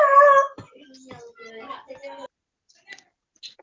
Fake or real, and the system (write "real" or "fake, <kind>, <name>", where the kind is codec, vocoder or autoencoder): real